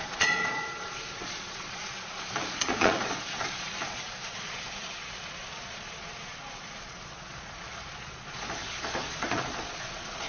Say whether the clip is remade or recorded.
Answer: remade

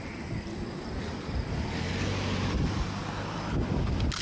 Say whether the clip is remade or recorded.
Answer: recorded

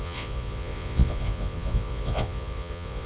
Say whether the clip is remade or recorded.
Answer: remade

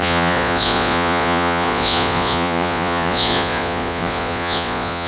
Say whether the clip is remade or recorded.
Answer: remade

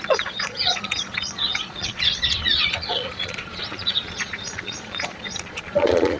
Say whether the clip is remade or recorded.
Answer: remade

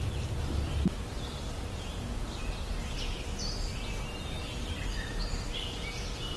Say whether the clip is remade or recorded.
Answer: recorded